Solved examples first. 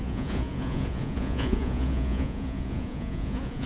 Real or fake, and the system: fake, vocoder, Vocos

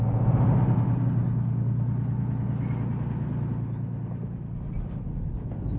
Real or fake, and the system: real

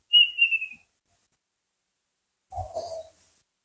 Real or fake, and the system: real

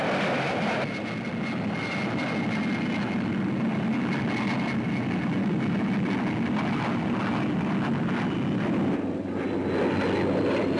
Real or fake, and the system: real